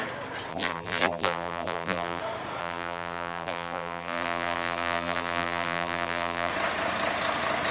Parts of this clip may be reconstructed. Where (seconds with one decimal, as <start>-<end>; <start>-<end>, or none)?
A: 0.5-2.2; 2.6-6.5